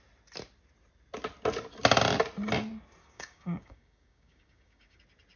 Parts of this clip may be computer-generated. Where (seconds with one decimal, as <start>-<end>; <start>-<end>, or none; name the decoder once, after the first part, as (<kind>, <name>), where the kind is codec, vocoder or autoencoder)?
3.0-5.0 (codec, DAC)